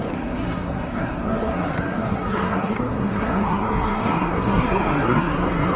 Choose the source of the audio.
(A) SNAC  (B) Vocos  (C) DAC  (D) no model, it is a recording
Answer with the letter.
A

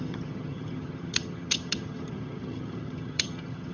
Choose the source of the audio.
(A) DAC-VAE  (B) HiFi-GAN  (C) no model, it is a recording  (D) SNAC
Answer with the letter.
B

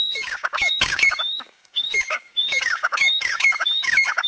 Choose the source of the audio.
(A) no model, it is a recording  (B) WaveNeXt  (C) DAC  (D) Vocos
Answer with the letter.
C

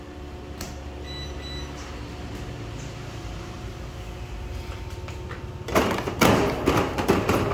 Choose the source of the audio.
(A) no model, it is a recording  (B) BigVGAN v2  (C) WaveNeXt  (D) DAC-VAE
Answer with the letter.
A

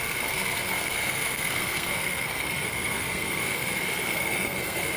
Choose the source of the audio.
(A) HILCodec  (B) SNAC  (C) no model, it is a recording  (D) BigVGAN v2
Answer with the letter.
B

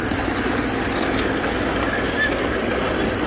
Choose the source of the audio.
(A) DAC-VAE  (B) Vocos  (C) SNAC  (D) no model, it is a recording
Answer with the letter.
D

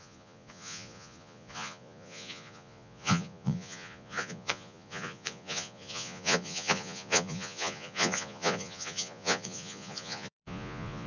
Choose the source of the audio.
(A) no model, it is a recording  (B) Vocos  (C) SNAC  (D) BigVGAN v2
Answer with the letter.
B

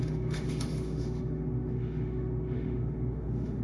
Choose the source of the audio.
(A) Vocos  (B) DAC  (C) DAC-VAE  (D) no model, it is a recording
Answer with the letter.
C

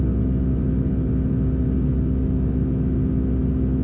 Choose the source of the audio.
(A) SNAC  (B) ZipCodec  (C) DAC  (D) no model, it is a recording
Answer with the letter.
D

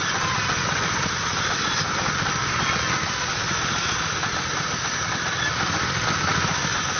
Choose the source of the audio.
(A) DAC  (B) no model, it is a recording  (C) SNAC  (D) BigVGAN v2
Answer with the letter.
B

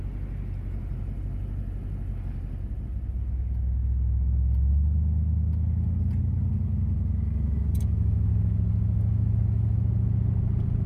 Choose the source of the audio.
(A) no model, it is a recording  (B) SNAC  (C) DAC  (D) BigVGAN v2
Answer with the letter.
A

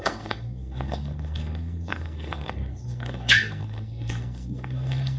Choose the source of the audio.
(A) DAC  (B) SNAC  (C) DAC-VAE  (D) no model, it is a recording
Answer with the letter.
B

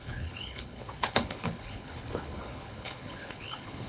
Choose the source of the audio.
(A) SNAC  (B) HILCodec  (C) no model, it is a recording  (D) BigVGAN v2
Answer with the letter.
B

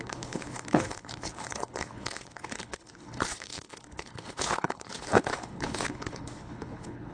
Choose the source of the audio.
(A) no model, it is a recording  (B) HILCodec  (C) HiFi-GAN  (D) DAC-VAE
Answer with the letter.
B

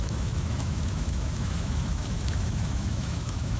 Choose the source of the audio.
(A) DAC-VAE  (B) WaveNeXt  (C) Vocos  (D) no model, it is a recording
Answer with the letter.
A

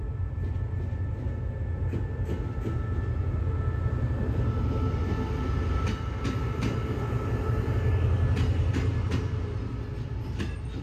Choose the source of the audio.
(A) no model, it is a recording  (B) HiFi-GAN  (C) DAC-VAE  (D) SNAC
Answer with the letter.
A